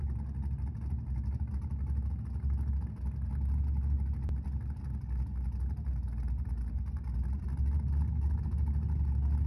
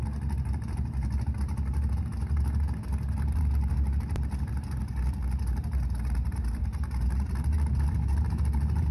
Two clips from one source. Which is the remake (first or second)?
second